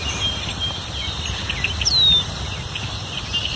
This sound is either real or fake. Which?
real